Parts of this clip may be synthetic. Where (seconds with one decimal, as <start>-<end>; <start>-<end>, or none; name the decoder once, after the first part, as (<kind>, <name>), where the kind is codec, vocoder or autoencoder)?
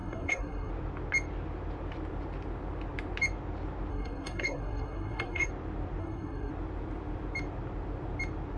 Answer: 0.0-0.7 (codec, SNAC); 3.9-5.5; 6.0-6.5